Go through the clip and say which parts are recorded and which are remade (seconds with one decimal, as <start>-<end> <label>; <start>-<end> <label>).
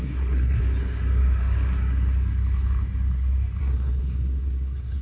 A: 0.0-0.6 remade; 0.6-3.6 recorded; 3.6-5.0 remade